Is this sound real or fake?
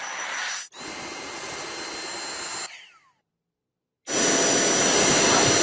real